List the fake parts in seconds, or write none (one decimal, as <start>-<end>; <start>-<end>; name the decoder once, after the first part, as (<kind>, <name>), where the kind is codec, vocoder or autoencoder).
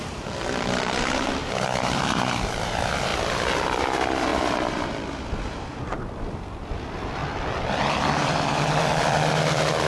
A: 0.0-3.1 (vocoder, BigVGAN v2); 3.6-7.2; 7.8-9.9